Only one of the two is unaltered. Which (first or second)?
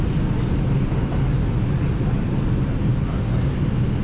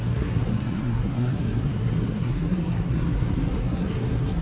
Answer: first